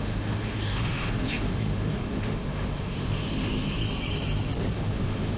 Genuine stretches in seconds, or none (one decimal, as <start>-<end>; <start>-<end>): 3.8-4.7